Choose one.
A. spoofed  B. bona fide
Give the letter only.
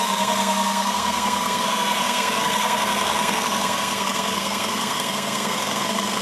A